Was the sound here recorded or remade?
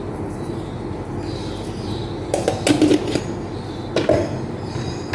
recorded